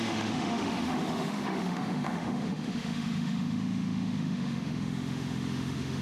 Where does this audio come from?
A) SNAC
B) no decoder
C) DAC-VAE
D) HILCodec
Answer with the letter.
C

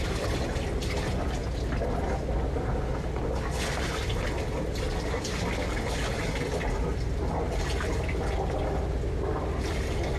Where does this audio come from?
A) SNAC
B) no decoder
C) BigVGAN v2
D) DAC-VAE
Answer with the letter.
B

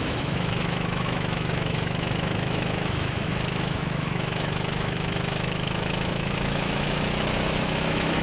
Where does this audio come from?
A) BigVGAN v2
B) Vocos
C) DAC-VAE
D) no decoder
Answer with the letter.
C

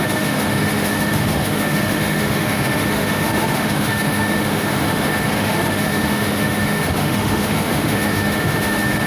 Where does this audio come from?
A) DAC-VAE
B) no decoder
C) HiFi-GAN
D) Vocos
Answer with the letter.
A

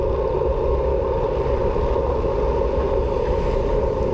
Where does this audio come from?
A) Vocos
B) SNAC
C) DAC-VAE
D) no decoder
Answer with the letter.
D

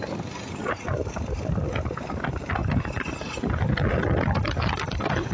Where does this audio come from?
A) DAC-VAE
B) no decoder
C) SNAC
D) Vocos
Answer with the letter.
B